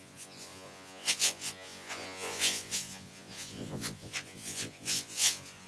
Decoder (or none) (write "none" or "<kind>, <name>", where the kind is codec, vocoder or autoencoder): vocoder, Vocos